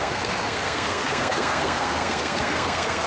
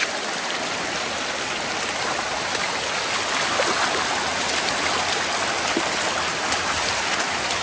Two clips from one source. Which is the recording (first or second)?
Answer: second